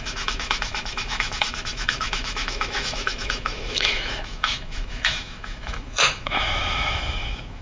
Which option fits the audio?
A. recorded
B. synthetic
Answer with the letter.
B